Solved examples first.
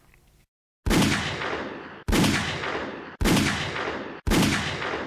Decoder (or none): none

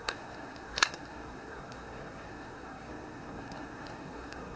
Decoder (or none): codec, SNAC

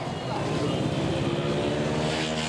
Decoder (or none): none